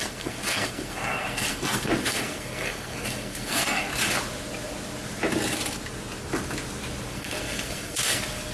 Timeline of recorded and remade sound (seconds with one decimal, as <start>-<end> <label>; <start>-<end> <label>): 0.0-3.9 remade; 3.9-7.1 recorded; 7.1-8.5 remade